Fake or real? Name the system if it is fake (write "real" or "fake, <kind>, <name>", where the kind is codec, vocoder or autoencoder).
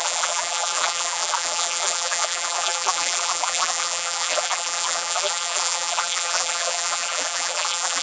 fake, vocoder, BigVGAN v2